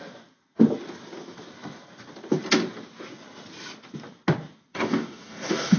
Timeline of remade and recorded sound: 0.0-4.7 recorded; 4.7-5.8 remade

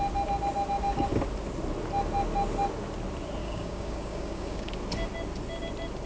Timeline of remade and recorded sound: 0.0-3.4 recorded; 3.4-4.7 remade; 4.7-6.1 recorded

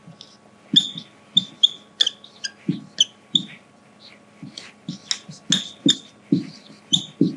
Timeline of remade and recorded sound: 0.0-7.4 recorded

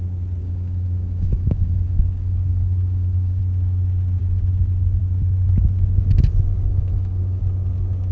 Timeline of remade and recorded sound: 0.0-0.4 recorded; 0.4-3.4 remade; 3.4-6.7 recorded; 6.7-7.4 remade; 7.4-8.1 recorded

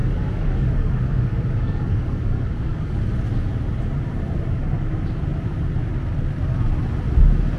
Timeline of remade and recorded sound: 0.0-3.0 remade; 3.0-7.6 recorded

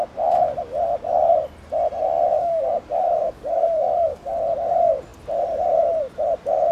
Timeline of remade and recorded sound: 0.0-2.3 recorded; 2.3-4.4 remade; 4.4-6.7 recorded

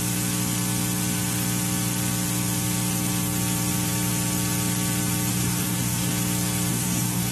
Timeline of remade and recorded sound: 0.0-5.3 recorded; 5.3-6.1 remade; 6.1-6.7 recorded; 6.7-7.3 remade

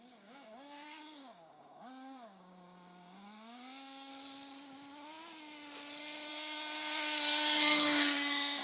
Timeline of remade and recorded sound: 0.0-4.1 remade; 4.1-6.3 recorded; 6.3-8.6 remade